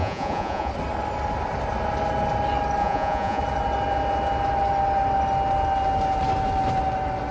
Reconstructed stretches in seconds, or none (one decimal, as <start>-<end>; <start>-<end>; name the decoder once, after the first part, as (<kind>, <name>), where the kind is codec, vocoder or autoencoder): 0.0-0.7 (vocoder, Vocos); 2.8-3.4